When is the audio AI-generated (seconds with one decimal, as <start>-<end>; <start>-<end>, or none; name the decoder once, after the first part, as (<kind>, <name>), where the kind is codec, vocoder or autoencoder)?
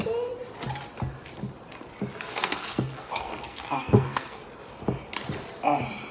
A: 2.3-4.4 (codec, SNAC)